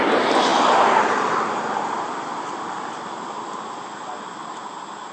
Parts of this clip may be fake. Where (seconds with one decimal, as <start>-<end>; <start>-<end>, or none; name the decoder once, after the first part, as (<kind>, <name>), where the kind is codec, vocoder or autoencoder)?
0.5-1.1 (vocoder, BigVGAN v2)